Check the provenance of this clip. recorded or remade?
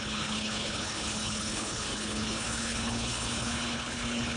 remade